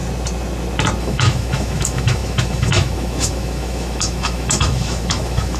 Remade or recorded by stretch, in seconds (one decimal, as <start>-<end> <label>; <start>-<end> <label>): 0.0-1.0 recorded; 1.0-5.6 remade